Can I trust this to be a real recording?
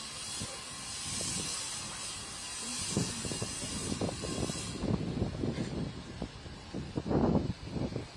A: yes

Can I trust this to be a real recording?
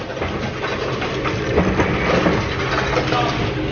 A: yes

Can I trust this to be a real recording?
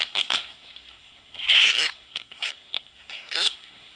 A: no